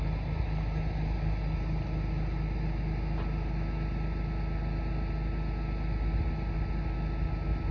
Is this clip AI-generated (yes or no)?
no